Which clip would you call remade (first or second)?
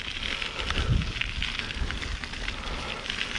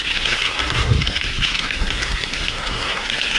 second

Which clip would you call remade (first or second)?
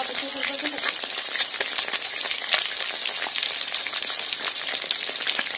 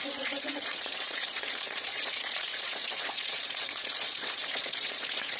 second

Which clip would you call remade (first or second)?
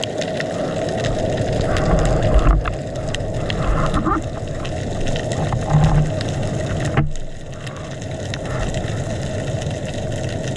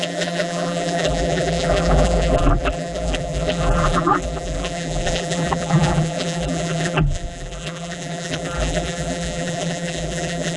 second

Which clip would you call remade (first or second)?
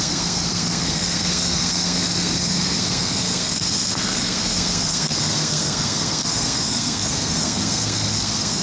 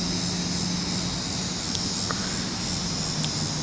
first